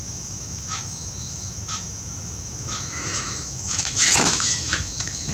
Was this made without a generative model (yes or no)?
no